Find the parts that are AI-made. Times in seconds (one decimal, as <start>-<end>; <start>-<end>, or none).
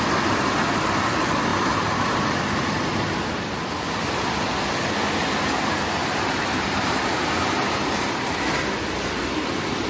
1.5-2.3; 6.0-8.3